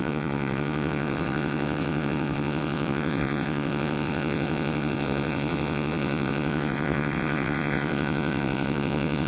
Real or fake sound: fake